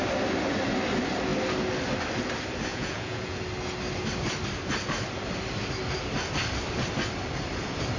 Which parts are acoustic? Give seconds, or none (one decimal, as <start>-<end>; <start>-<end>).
0.0-2.7; 3.4-8.0

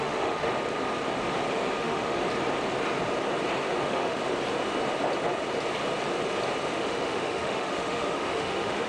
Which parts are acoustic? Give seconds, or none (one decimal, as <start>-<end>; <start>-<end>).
0.5-1.8; 2.2-3.8; 4.2-6.7

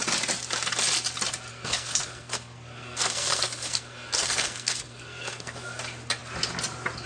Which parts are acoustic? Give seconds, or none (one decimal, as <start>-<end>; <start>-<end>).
0.0-1.5; 5.8-7.1